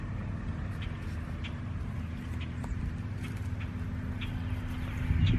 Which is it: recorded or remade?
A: recorded